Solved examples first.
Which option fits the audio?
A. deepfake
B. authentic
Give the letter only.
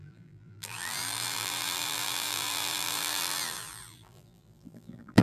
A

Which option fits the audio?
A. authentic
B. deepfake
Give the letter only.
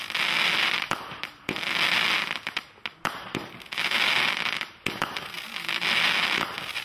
A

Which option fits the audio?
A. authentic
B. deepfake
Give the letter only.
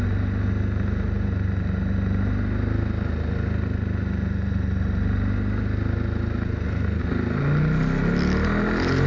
A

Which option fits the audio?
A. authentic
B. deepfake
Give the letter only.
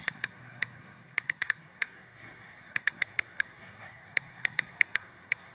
B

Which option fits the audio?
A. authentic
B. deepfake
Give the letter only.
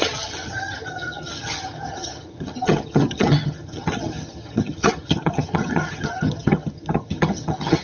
B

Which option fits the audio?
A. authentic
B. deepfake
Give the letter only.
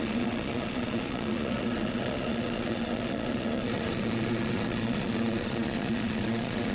B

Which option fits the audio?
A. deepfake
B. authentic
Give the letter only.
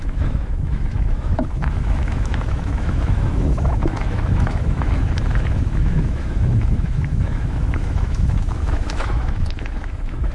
A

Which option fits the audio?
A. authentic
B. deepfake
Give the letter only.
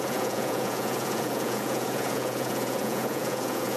B